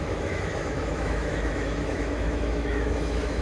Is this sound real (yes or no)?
no